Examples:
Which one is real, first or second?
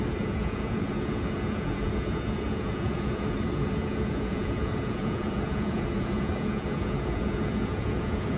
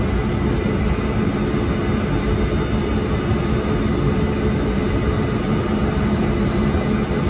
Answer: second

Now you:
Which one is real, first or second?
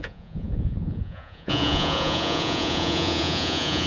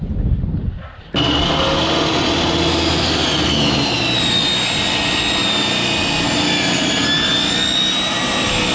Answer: second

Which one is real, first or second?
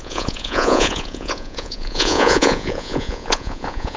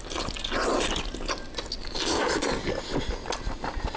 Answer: second